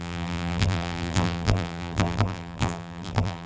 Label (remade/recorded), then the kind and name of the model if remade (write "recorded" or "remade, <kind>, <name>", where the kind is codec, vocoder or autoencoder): remade, vocoder, BigVGAN v2